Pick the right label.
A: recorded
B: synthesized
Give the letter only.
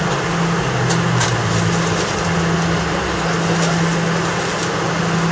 A